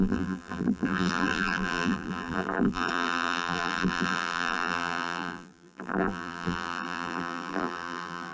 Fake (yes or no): yes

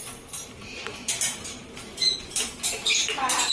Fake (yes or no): yes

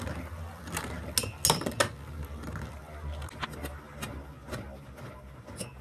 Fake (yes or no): no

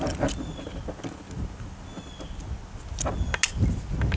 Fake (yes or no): no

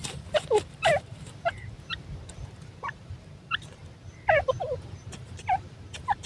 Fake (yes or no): yes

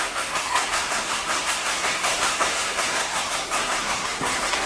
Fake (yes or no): yes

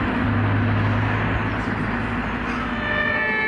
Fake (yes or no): no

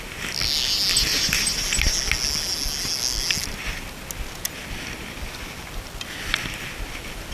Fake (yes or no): no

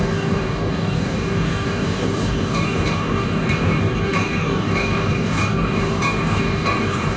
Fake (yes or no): yes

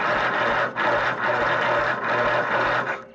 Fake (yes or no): no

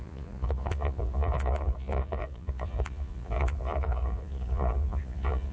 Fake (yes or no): yes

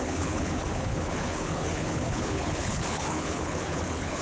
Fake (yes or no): yes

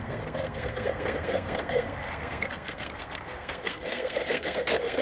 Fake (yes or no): yes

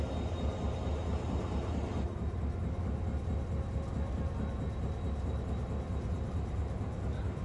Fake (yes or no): no